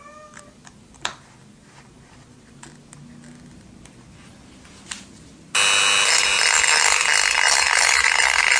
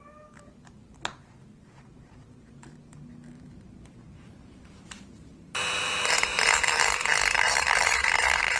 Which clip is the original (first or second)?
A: first